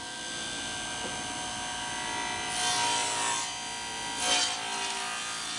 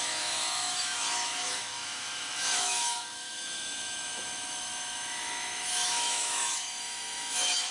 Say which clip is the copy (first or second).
second